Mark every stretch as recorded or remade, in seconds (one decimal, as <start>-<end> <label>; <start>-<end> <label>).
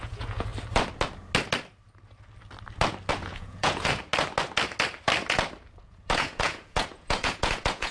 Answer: 0.0-0.5 remade; 0.5-3.1 recorded; 3.1-4.1 remade; 4.1-5.8 recorded; 5.8-7.9 remade